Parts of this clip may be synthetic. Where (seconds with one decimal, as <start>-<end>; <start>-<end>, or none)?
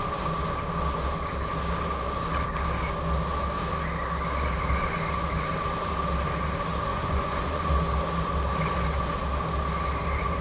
6.9-7.7